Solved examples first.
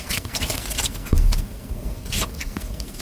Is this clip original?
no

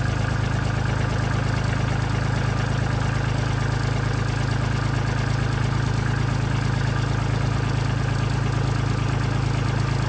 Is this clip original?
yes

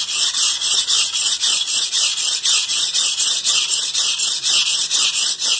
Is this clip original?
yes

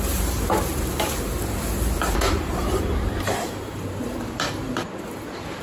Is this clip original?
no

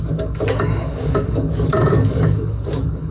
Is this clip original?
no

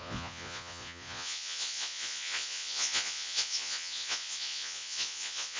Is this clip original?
no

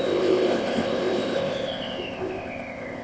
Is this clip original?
no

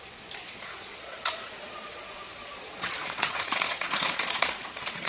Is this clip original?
no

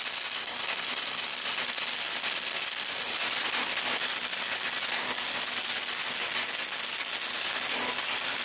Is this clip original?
yes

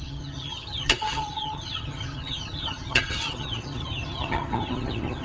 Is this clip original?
no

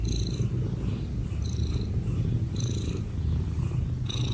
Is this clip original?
yes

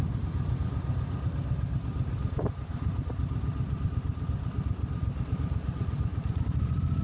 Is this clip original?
yes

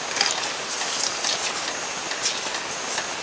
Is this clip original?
yes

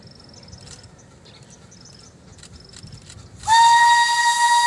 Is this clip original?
yes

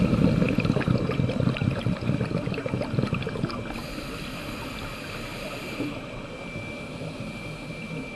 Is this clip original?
yes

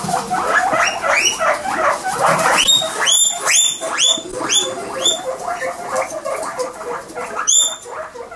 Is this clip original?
yes